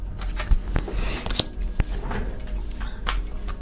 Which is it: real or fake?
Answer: real